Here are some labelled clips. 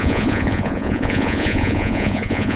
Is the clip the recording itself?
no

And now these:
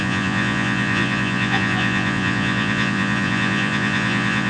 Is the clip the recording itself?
no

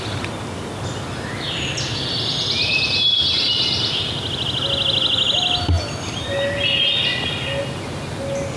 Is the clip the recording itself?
yes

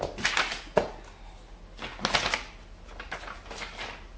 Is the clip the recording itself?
yes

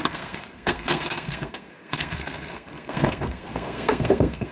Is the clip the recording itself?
no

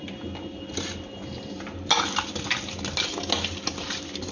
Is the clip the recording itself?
yes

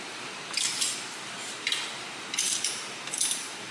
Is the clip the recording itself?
no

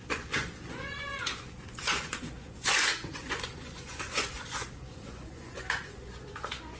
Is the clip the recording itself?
no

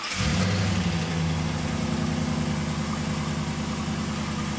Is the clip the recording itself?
yes